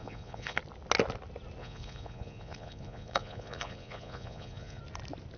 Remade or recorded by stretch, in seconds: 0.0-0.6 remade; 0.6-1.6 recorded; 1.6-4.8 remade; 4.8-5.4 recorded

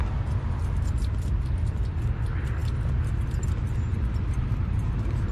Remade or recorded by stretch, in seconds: 0.0-5.3 recorded

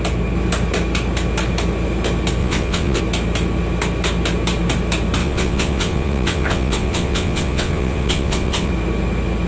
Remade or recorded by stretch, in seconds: 0.0-2.4 recorded; 2.4-3.0 remade; 3.0-5.2 recorded; 5.2-8.7 remade; 8.7-9.5 recorded